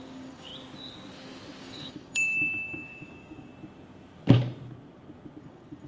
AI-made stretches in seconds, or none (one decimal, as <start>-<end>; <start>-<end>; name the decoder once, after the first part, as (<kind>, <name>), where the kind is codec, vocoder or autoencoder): 0.0-0.5 (codec, DAC); 1.6-3.5; 5.4-5.9